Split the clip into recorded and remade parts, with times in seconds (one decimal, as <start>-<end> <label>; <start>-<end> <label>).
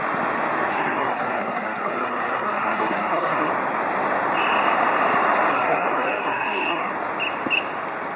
0.0-0.7 recorded; 0.7-3.5 remade; 3.5-5.5 recorded; 5.5-6.9 remade; 6.9-8.2 recorded